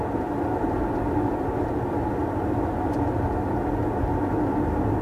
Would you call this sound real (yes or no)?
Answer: yes